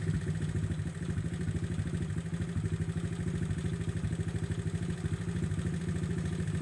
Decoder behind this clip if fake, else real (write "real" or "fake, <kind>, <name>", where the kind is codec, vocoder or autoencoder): real